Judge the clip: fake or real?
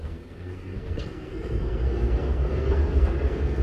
fake